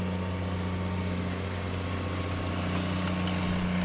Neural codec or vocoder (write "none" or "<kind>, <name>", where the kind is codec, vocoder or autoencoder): none